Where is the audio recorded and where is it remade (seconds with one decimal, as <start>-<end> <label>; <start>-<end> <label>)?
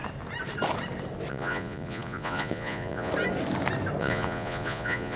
0.0-1.3 recorded; 1.3-3.1 remade; 3.1-4.0 recorded; 4.0-5.2 remade